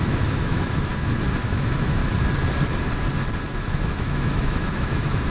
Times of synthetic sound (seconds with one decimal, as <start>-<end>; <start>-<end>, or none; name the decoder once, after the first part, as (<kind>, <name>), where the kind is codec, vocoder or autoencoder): 0.0-0.9 (autoencoder, DAC-VAE); 1.4-2.0; 3.6-5.3